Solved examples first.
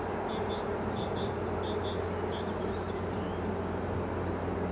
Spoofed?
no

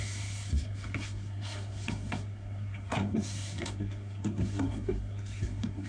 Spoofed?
yes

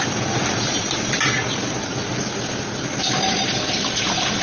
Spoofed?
no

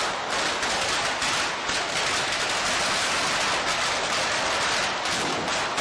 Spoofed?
no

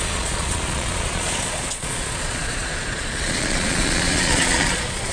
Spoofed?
yes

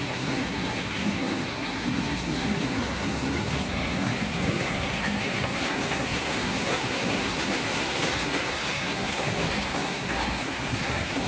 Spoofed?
yes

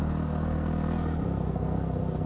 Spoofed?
yes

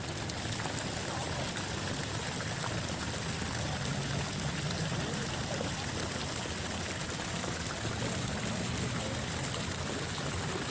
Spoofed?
no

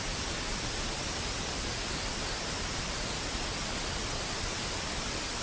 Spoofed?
no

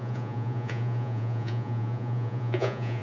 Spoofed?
yes